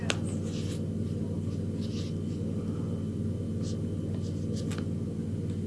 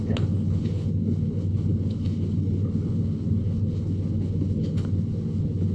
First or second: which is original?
first